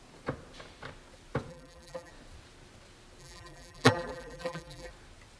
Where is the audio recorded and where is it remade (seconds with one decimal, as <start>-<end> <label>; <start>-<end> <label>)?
0.0-1.5 recorded; 1.5-2.1 remade; 2.1-3.2 recorded; 3.2-4.9 remade; 4.9-5.4 recorded

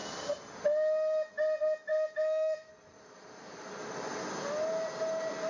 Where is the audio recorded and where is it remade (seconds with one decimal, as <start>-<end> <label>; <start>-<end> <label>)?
0.0-1.9 recorded; 1.9-2.7 remade; 2.7-5.5 recorded

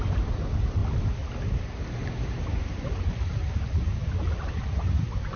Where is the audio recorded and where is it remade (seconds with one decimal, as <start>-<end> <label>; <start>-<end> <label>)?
0.0-5.4 recorded

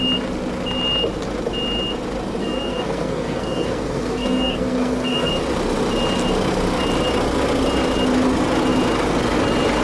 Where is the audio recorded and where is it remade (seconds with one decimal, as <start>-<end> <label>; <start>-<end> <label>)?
0.0-2.4 recorded; 2.4-5.3 remade; 5.3-9.8 recorded

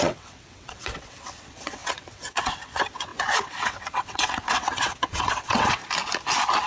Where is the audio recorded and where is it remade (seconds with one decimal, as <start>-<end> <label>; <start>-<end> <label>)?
0.0-5.8 remade; 5.8-6.7 recorded

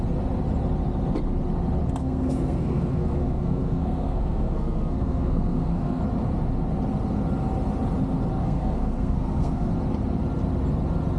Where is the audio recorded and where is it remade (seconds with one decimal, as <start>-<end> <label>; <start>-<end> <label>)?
0.0-2.0 recorded; 2.0-6.0 remade; 6.0-8.4 recorded; 8.4-9.7 remade; 9.7-11.2 recorded

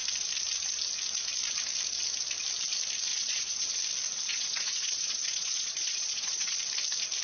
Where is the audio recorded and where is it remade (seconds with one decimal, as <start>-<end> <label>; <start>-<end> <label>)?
0.0-3.1 recorded; 3.1-3.8 remade; 3.8-4.3 recorded; 4.3-6.6 remade; 6.6-7.2 recorded

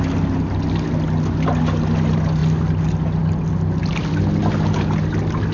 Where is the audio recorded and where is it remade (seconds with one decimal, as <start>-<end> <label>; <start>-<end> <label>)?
0.0-5.5 recorded